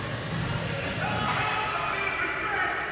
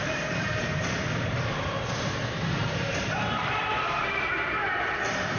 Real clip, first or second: first